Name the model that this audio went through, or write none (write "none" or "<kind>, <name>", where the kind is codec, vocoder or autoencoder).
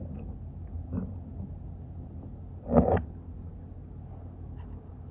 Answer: none